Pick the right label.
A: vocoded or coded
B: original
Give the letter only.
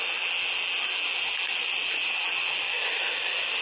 B